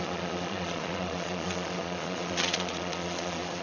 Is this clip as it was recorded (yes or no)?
no